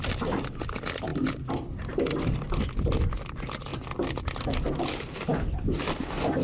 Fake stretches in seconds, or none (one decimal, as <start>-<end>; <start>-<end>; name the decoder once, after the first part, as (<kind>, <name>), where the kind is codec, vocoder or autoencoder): none